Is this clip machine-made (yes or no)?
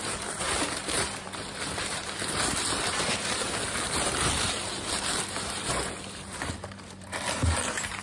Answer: yes